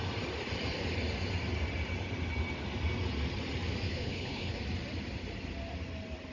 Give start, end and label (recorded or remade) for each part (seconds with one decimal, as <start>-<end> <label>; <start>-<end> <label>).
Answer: 0.0-3.9 recorded; 3.9-4.6 remade; 4.6-6.3 recorded